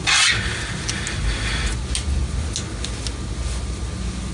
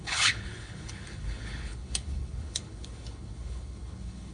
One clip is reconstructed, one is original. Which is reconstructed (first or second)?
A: second